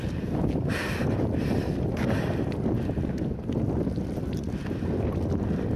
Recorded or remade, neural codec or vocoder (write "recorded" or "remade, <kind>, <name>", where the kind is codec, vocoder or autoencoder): recorded